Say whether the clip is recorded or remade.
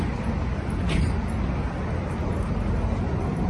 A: recorded